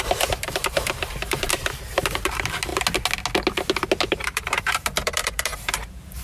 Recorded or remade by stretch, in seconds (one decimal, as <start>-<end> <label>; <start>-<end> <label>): 0.0-2.7 remade; 2.7-4.1 recorded; 4.1-6.2 remade